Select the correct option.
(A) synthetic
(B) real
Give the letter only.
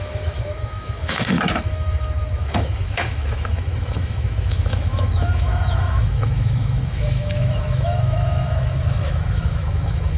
A